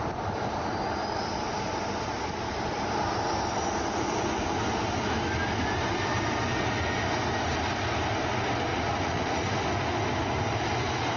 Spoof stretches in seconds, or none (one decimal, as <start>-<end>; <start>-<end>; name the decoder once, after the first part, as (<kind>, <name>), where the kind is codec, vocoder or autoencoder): 8.7-9.5 (vocoder, Vocos)